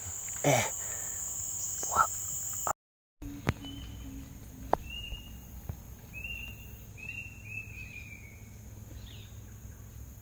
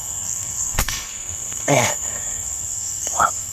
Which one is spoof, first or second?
second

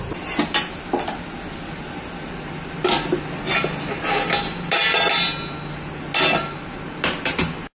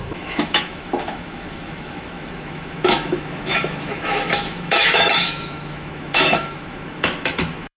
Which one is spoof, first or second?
second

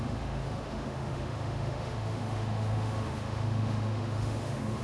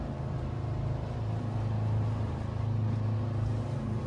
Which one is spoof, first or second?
first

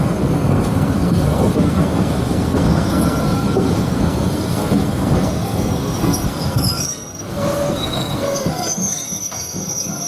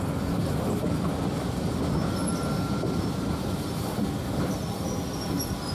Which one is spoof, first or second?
first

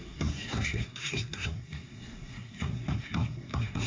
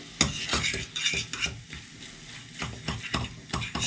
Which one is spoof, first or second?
first